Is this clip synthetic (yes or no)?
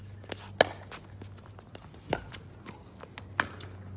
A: no